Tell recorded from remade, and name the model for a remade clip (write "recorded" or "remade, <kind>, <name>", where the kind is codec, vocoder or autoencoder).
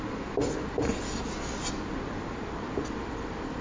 recorded